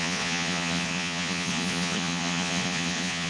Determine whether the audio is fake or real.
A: fake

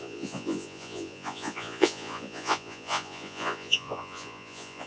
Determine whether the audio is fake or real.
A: fake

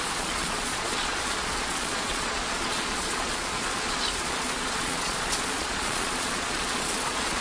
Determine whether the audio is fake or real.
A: fake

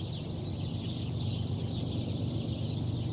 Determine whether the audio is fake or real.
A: real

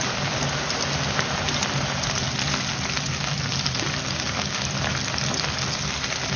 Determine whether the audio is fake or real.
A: real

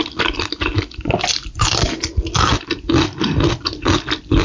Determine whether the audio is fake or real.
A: real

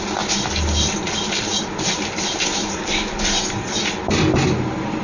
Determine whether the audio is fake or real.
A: real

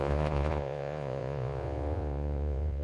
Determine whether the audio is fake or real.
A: fake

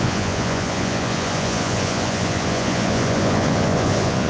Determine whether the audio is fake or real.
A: fake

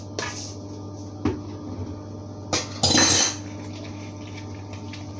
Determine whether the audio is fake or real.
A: real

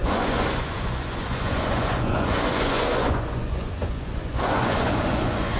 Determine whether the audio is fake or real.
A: fake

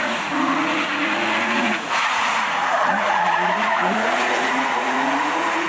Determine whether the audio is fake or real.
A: fake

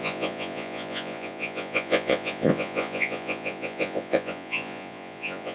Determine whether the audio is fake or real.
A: fake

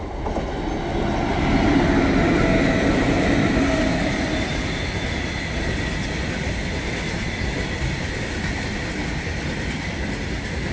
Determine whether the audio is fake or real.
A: real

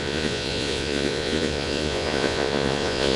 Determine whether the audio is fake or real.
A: fake